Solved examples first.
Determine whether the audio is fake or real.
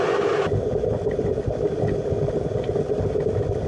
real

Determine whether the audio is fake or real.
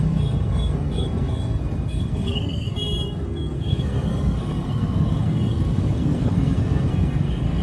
fake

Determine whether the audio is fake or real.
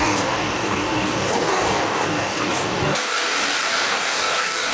fake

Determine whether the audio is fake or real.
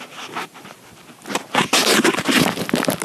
real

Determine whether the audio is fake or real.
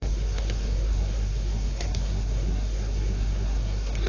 fake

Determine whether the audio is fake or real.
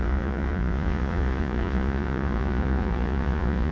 fake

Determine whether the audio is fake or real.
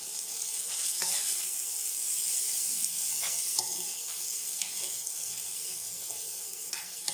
fake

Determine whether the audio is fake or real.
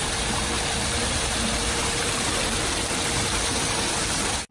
fake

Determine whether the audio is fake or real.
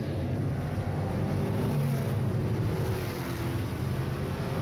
real